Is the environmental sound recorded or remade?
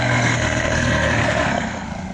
remade